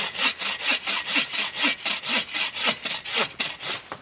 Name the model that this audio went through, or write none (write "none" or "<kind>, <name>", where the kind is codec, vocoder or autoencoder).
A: none